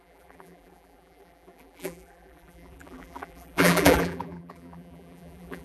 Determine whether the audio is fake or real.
fake